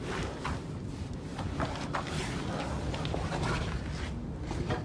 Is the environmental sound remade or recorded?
recorded